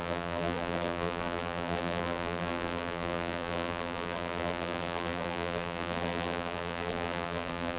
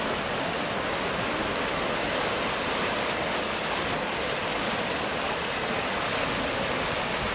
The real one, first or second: second